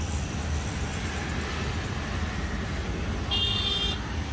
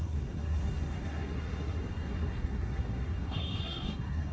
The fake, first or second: second